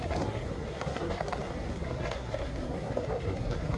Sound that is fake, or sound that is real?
fake